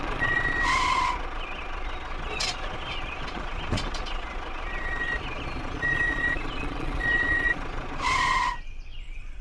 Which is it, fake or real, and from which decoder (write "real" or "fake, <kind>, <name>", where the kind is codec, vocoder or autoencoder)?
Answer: fake, vocoder, Vocos